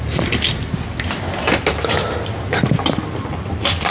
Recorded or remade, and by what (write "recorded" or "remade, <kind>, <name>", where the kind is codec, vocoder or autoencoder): recorded